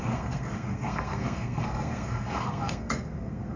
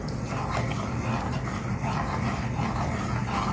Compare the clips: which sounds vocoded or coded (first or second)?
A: first